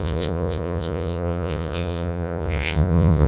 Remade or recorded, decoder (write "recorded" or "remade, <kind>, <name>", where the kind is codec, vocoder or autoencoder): remade, vocoder, Vocos